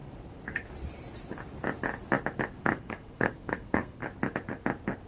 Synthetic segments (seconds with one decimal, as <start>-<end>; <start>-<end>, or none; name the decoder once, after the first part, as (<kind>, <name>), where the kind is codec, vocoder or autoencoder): 2.6-4.0 (codec, SNAC)